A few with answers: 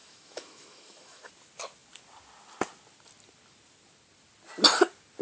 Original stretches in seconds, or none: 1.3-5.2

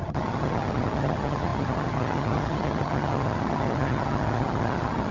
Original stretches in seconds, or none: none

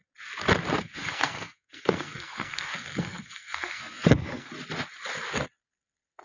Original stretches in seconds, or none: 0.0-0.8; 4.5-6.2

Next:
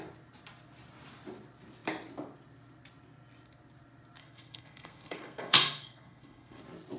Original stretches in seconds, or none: 0.0-4.2; 6.6-7.0

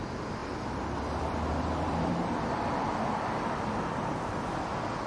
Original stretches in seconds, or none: 0.0-0.4; 3.5-5.1

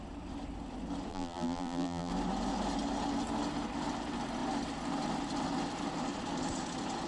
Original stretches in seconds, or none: 0.0-1.1; 2.1-7.1

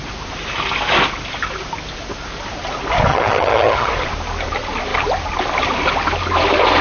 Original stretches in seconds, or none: 0.0-3.1; 3.9-6.8

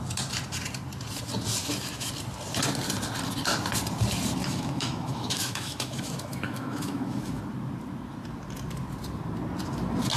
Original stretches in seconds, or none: 0.0-1.6; 2.1-4.4; 7.4-10.2